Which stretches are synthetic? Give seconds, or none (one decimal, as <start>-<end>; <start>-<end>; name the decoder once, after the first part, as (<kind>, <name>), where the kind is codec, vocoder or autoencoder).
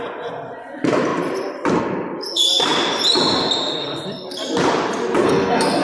5.2-5.8 (codec, SNAC)